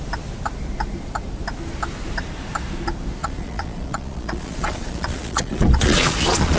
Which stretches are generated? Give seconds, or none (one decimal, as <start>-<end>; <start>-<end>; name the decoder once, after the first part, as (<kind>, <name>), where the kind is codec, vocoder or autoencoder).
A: 3.2-6.6 (vocoder, Vocos)